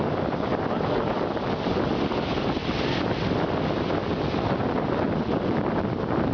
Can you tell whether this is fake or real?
real